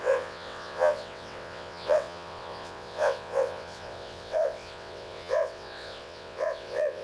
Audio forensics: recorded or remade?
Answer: remade